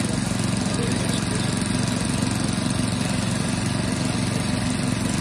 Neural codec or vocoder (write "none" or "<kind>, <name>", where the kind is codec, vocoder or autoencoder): none